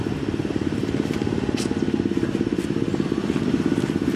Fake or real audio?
real